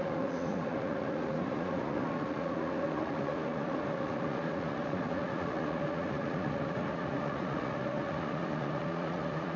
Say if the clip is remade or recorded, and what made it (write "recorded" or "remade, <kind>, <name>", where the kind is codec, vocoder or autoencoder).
remade, vocoder, Vocos